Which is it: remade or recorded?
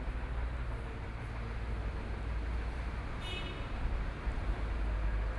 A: recorded